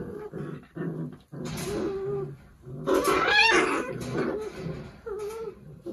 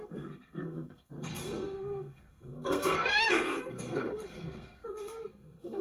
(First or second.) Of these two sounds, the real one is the first